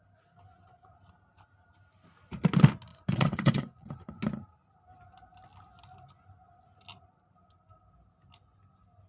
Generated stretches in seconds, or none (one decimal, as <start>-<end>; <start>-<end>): 2.9-3.9